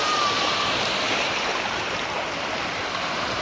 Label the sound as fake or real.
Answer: fake